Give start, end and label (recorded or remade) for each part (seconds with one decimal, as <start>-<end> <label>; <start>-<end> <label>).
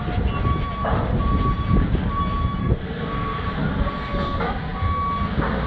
0.0-2.6 recorded; 2.6-3.5 remade; 3.5-5.7 recorded